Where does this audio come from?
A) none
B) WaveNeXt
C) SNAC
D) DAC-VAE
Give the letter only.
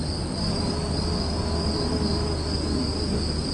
A